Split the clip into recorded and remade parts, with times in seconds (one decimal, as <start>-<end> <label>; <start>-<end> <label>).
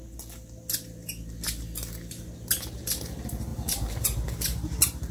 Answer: 0.0-5.1 recorded